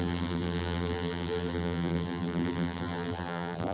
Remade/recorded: remade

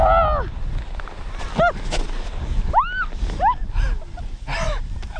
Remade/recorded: recorded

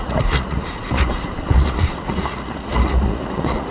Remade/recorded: remade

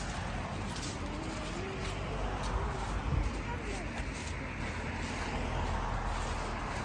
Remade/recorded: recorded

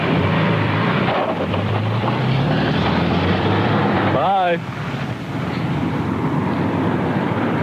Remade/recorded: remade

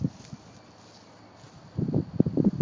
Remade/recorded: recorded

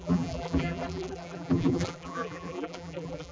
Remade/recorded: remade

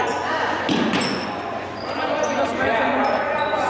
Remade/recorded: remade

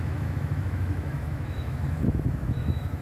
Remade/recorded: remade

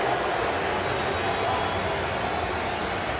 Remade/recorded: recorded